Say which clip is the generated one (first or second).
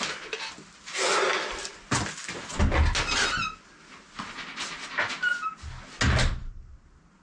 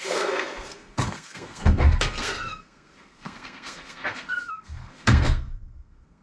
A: second